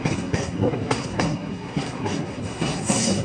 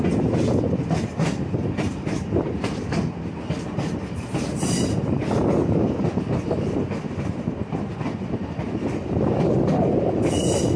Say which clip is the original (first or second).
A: second